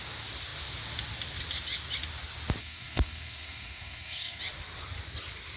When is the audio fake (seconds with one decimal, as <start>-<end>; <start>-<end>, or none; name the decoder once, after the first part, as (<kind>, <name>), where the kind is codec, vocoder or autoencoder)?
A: 2.6-4.4 (codec, SNAC)

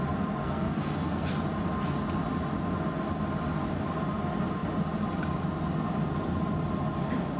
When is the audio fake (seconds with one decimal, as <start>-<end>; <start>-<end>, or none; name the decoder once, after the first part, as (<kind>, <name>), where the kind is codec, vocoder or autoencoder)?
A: 0.4-1.3 (codec, SNAC)